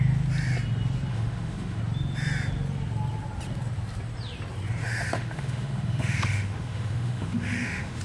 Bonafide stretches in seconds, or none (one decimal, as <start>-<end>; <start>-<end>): 0.0-1.1; 1.8-4.8